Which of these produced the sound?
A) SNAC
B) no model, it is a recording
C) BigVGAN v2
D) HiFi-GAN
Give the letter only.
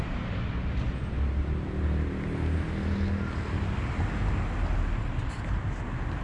B